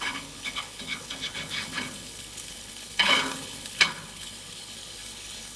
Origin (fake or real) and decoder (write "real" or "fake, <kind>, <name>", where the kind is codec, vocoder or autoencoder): fake, codec, HILCodec